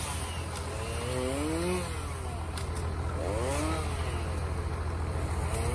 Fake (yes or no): no